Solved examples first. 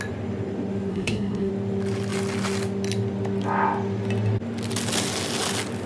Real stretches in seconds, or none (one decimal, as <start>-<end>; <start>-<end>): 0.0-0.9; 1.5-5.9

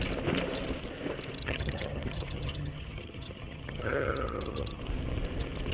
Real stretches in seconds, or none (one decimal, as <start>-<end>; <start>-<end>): 0.0-1.4; 4.8-5.7

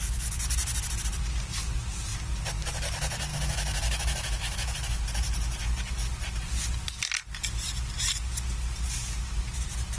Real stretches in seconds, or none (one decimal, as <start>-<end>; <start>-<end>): 0.0-3.3; 5.0-10.0

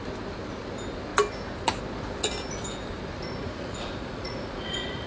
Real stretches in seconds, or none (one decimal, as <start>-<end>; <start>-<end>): 0.0-3.4

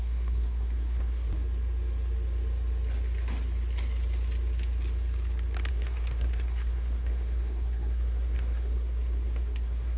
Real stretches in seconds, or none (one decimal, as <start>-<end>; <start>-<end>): 1.3-5.7